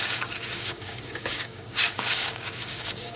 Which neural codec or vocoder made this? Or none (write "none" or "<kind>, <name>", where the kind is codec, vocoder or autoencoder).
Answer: codec, DAC